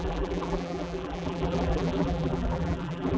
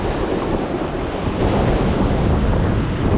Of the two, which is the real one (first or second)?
second